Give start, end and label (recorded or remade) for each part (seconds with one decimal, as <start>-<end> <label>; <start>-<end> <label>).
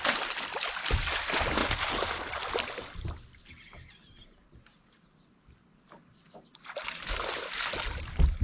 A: 0.0-8.4 recorded